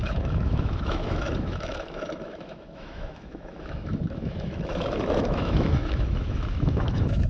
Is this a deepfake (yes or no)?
yes